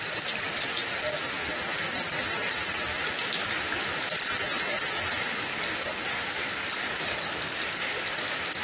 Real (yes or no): yes